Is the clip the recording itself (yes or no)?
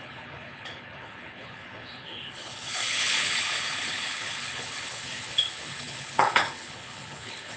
no